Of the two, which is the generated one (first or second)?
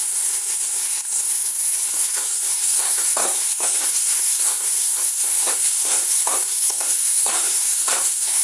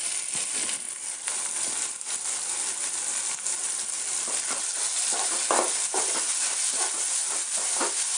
first